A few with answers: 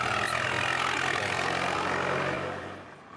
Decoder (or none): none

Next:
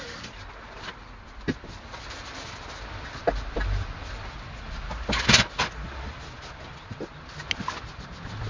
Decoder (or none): none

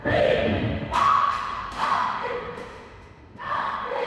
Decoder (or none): autoencoder, DAC-VAE